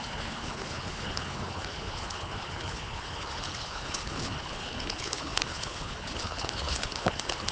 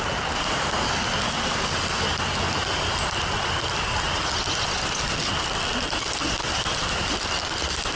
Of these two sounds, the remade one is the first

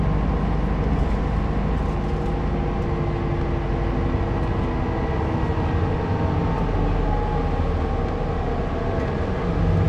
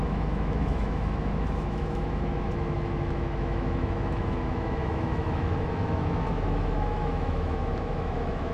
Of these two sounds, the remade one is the second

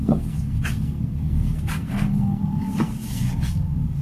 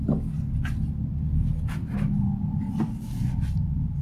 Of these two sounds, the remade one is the first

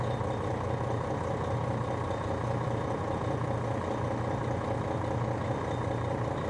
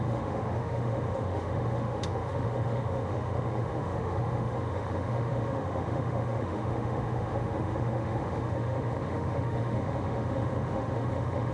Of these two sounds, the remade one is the second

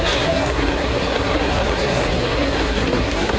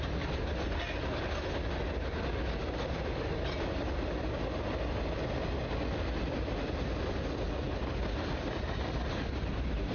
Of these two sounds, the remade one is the first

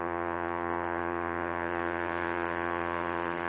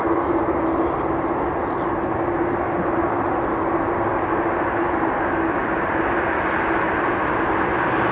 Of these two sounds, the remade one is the first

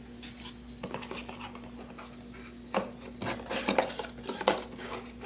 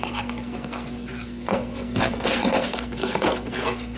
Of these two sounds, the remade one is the second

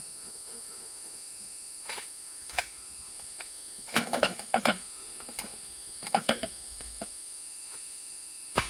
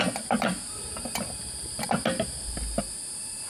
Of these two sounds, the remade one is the first